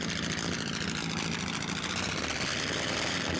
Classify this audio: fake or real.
real